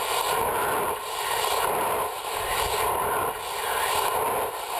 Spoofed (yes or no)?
yes